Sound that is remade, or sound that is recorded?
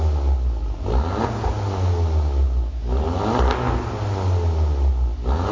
recorded